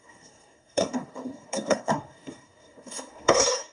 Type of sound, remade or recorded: remade